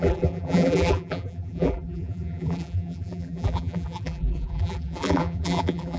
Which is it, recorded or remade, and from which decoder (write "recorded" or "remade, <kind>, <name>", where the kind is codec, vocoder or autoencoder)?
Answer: remade, vocoder, BigVGAN v2